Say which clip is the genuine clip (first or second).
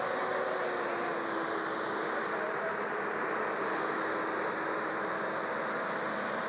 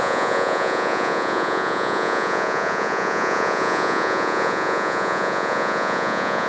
first